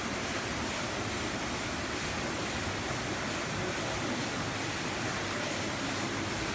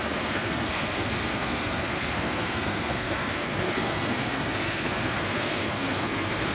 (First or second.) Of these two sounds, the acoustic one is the first